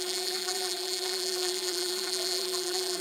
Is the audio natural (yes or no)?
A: no